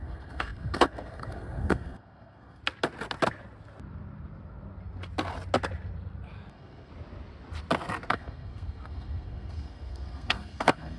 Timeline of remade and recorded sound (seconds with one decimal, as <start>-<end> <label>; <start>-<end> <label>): 0.0-2.6 remade; 2.6-6.5 recorded; 6.5-6.9 remade; 6.9-8.1 recorded; 8.1-11.0 remade